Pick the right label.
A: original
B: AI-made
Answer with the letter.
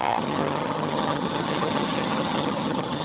B